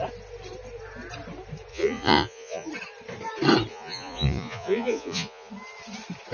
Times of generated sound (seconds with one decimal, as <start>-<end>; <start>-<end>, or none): 1.7-2.7; 3.7-5.5